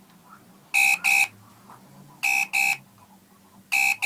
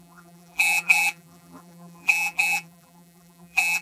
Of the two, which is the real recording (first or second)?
first